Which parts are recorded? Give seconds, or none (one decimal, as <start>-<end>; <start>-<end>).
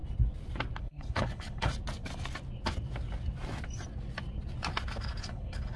0.0-0.8; 1.7-5.2